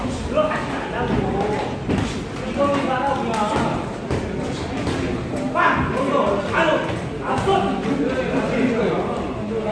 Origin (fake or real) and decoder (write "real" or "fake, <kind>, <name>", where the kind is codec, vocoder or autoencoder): real